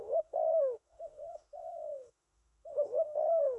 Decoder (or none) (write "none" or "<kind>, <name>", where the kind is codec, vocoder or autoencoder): autoencoder, DAC-VAE